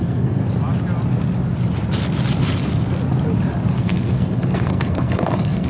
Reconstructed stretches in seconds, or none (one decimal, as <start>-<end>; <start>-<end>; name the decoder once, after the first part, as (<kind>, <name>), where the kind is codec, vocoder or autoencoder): 0.0-0.4 (codec, SNAC); 3.8-5.7

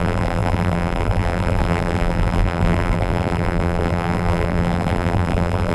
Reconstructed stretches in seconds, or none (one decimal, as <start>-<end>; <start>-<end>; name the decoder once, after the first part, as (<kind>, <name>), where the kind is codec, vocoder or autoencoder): 0.0-5.7 (vocoder, BigVGAN v2)

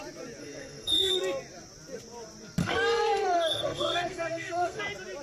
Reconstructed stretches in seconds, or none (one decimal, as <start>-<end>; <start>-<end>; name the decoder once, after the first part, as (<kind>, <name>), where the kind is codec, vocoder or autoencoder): 0.4-1.1 (codec, SNAC); 2.6-4.8

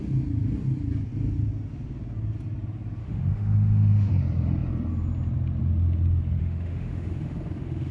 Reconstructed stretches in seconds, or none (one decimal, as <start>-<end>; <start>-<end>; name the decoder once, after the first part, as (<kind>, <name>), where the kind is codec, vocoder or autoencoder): 3.0-4.1 (autoencoder, DAC-VAE); 6.4-7.9

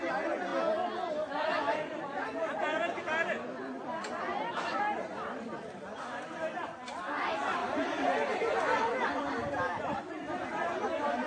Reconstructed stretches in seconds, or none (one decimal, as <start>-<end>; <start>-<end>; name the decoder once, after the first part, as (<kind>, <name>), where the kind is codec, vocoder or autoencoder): 4.3-4.8 (vocoder, BigVGAN v2)

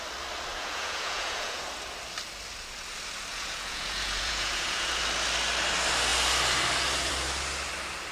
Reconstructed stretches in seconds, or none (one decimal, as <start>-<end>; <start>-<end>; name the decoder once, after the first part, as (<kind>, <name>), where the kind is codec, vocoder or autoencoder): 0.5-1.6 (vocoder, Vocos); 3.3-5.0